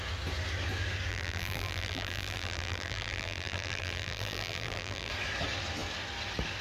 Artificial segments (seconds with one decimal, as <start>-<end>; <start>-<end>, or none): 1.1-5.1